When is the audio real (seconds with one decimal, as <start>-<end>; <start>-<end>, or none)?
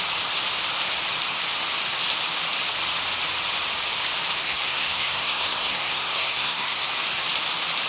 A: 0.0-4.4; 6.9-7.9